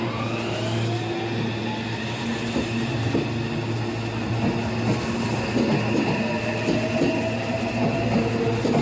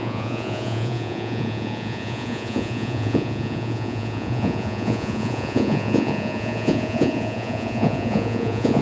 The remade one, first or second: second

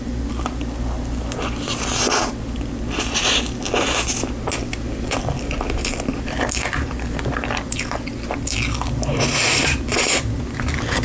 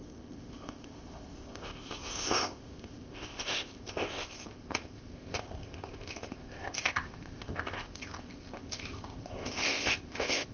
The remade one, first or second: second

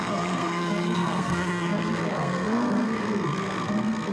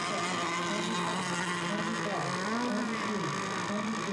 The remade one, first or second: first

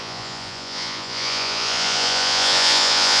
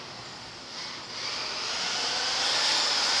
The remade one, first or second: first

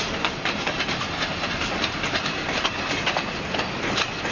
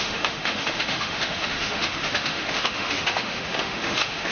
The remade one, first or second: second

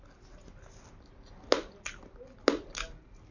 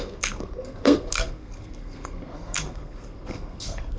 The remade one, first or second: second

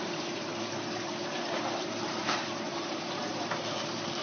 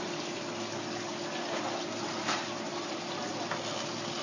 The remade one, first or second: first